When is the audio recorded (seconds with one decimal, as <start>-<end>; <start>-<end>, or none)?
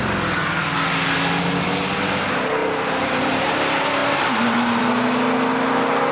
0.0-2.6; 3.2-4.0; 4.8-6.1